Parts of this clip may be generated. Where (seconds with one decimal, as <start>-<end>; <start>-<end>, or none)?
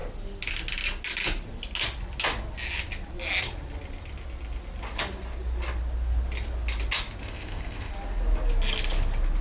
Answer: 7.2-7.9